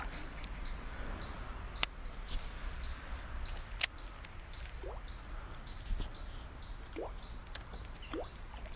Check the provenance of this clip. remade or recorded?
recorded